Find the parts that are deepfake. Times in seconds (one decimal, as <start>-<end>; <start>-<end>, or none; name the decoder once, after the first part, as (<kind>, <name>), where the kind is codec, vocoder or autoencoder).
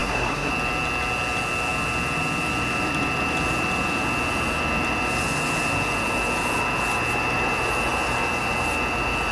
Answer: 0.0-0.5 (codec, SNAC)